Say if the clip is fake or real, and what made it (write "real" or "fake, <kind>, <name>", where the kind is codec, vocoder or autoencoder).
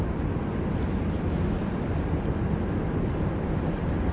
real